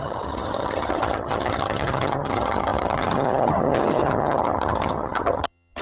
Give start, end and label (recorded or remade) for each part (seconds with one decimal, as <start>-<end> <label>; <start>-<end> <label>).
0.0-5.8 remade